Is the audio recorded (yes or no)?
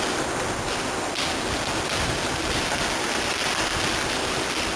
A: yes